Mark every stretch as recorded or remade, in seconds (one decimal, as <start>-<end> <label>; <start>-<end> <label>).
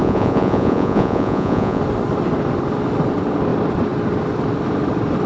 0.0-1.8 remade; 1.8-5.3 recorded